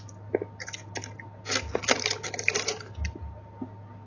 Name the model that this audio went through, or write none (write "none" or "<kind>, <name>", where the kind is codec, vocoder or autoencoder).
none